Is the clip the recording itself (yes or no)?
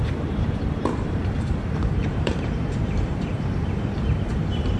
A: no